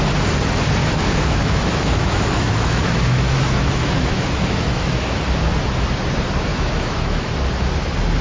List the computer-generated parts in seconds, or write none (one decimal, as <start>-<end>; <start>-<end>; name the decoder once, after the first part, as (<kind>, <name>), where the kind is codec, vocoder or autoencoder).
0.8-5.2 (autoencoder, DAC-VAE); 6.5-7.3